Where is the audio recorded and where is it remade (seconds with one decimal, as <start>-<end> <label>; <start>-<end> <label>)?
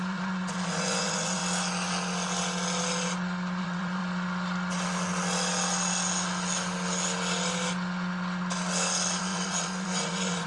0.0-1.4 remade; 1.4-3.6 recorded; 3.6-4.0 remade; 4.0-9.2 recorded; 9.2-10.5 remade